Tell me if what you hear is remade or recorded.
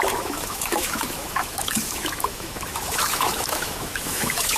remade